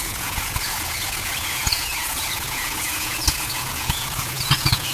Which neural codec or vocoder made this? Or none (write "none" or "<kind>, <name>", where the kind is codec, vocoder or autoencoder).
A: vocoder, Vocos